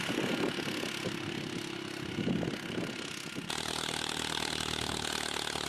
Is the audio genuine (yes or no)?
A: yes